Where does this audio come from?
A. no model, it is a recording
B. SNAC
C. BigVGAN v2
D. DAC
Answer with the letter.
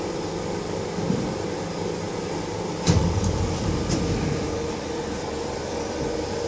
C